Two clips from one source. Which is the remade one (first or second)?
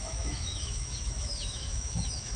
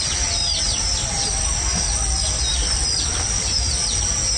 first